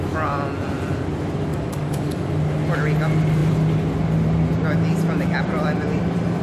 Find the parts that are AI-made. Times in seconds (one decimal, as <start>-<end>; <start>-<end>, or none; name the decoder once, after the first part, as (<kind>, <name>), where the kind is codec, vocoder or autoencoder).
1.5-2.3 (codec, DAC)